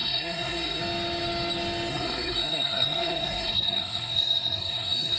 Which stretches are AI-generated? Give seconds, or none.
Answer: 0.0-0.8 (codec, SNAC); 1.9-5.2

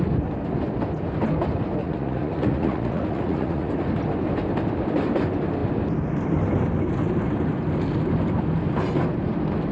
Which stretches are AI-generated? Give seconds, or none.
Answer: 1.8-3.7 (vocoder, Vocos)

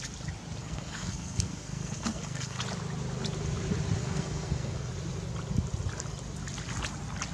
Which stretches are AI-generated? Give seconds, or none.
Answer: 0.6-2.6 (codec, SNAC); 4.0-4.9

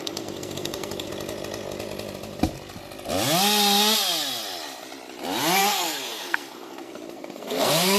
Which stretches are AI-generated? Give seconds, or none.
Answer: 0.0-1.1 (codec, SNAC); 5.6-8.0

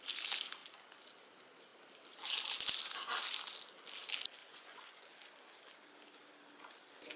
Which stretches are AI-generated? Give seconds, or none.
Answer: 4.4-5.1 (vocoder, Vocos)

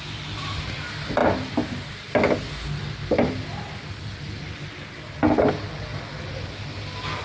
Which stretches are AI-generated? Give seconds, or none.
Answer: none

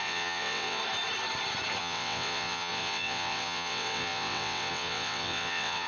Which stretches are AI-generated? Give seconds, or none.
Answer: 0.0-0.8 (vocoder, WaveNeXt); 1.8-5.9

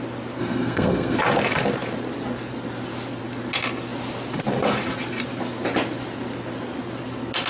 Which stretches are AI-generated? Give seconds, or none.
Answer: 0.4-1.2 (codec, SNAC)